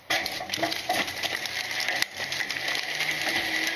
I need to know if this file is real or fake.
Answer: real